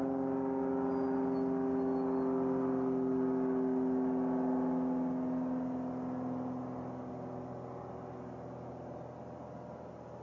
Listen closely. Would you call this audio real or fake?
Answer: real